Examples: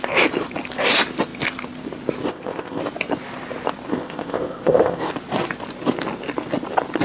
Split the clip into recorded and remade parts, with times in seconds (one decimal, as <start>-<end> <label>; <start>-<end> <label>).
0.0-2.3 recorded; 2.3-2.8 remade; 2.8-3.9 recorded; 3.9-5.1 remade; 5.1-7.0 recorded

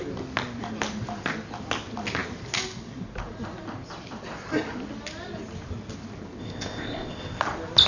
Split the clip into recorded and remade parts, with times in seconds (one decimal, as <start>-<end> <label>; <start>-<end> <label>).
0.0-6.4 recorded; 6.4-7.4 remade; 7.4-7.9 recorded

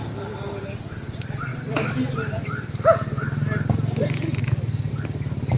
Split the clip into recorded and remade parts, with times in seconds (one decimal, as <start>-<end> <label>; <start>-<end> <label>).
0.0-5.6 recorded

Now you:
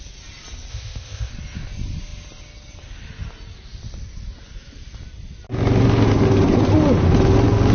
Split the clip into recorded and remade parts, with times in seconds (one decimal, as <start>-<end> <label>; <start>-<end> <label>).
0.0-0.7 recorded; 0.7-1.3 remade; 1.3-7.7 recorded